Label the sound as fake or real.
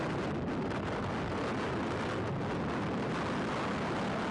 real